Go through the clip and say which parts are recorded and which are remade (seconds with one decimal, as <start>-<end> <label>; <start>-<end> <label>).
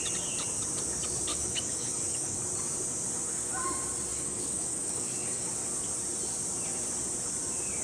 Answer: 0.0-1.3 recorded; 1.3-2.4 remade; 2.4-4.1 recorded; 4.1-5.5 remade; 5.5-7.8 recorded